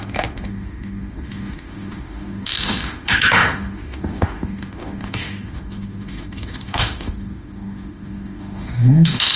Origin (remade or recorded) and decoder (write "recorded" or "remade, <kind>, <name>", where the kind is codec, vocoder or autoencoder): remade, autoencoder, DAC-VAE